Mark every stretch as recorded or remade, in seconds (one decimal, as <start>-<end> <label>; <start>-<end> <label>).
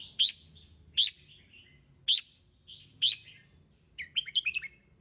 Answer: 0.0-5.0 recorded